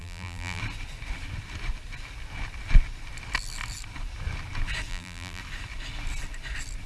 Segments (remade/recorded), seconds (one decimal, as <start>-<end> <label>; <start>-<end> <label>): 0.0-0.6 remade; 0.6-4.9 recorded; 4.9-5.4 remade; 5.4-6.9 recorded